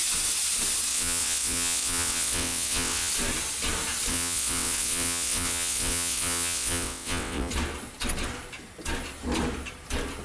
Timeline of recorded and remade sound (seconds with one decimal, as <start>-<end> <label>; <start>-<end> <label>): 0.0-0.9 recorded; 0.9-3.1 remade; 3.1-4.1 recorded; 4.1-7.5 remade; 7.5-10.2 recorded